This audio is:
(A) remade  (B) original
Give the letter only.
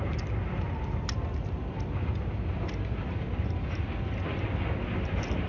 B